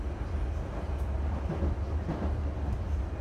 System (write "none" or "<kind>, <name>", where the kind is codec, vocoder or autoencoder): none